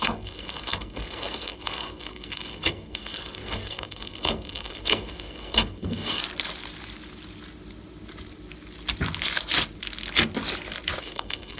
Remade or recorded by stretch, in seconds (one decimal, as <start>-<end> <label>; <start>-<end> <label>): 0.0-6.2 remade; 6.2-11.0 recorded; 11.0-11.6 remade